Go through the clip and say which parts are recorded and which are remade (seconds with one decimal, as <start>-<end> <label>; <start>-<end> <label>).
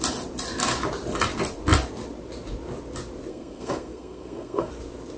0.0-3.3 recorded; 3.3-4.7 remade; 4.7-5.2 recorded